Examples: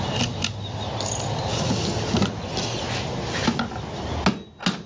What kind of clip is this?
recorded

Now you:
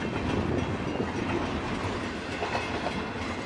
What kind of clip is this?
recorded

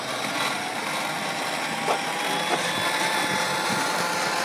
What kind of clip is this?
recorded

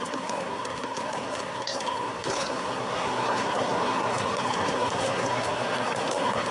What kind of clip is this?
remade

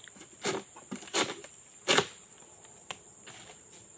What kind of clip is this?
recorded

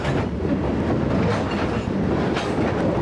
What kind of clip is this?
recorded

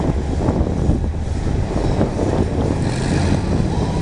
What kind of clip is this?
recorded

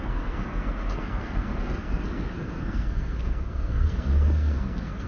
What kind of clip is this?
remade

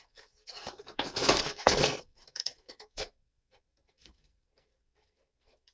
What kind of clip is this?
remade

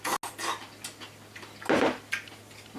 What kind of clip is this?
recorded